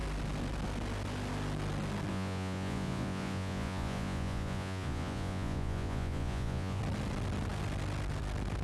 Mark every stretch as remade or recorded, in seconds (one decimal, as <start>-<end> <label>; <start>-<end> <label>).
0.0-2.1 recorded; 2.1-6.8 remade; 6.8-8.6 recorded

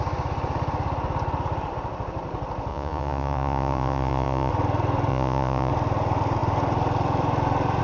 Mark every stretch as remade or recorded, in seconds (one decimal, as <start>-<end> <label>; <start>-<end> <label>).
0.0-2.7 recorded; 2.7-4.5 remade; 4.5-5.1 recorded; 5.1-5.7 remade; 5.7-7.8 recorded